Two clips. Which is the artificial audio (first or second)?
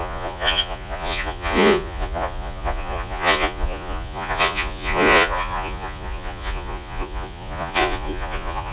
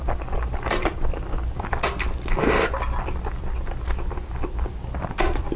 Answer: first